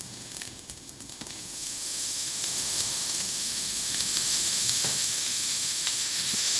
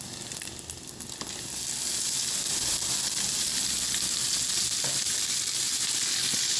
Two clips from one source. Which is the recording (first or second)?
second